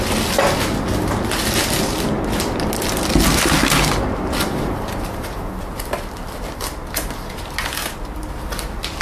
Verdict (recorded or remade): recorded